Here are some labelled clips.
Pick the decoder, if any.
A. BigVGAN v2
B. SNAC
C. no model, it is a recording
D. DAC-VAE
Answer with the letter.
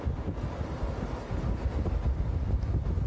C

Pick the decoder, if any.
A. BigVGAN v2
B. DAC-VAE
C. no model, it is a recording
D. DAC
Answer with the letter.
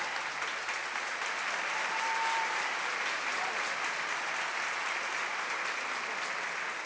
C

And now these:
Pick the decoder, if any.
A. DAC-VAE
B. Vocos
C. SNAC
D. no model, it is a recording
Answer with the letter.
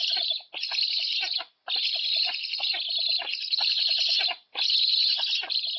D